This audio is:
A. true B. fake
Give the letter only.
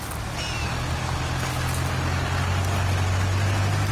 A